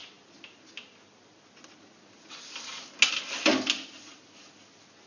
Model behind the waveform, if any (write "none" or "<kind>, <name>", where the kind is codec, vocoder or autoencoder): none